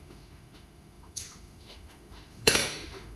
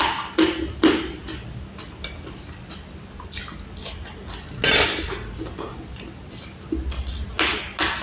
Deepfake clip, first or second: first